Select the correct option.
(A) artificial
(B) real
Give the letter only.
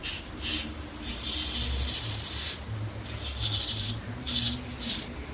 B